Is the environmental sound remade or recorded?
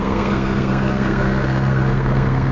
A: remade